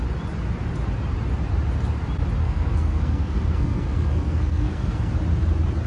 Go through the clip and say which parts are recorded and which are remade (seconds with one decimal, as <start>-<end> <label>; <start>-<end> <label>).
0.0-2.4 recorded; 2.4-5.1 remade; 5.1-5.9 recorded